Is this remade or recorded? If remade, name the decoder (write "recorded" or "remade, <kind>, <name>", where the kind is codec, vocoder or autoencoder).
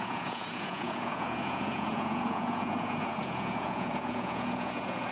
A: remade, vocoder, Vocos